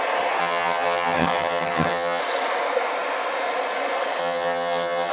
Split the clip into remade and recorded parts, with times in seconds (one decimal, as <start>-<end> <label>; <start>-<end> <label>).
0.0-0.4 recorded; 0.4-2.2 remade; 2.2-4.2 recorded; 4.2-5.1 remade